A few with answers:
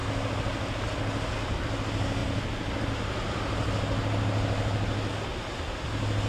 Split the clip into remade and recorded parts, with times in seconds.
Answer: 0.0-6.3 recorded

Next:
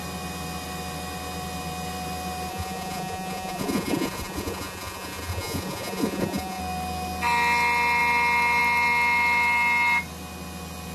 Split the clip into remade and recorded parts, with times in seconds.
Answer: 0.0-2.5 recorded; 2.5-6.6 remade; 6.6-10.9 recorded

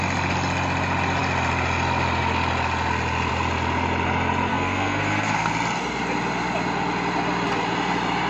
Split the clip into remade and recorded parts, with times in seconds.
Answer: 0.0-4.5 recorded; 4.5-5.5 remade; 5.5-8.3 recorded

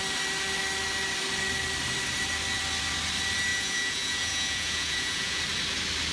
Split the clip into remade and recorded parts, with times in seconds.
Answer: 0.0-3.5 recorded; 3.5-5.4 remade; 5.4-6.1 recorded

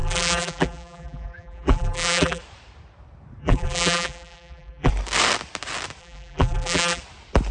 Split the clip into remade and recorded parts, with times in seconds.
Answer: 0.0-2.4 remade; 2.4-3.4 recorded; 3.4-4.9 remade; 4.9-6.0 recorded; 6.0-7.0 remade; 7.0-7.5 recorded

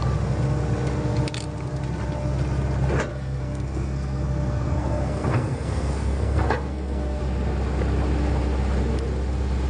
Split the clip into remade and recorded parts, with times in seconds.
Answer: 0.0-3.1 recorded; 3.1-7.2 remade; 7.2-9.7 recorded

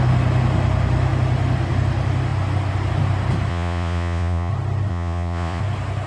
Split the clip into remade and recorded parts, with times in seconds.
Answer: 0.0-3.5 recorded; 3.5-4.5 remade; 4.5-4.9 recorded; 4.9-5.6 remade; 5.6-6.1 recorded